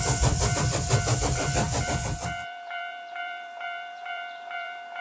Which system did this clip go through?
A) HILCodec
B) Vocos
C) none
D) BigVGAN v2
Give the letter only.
D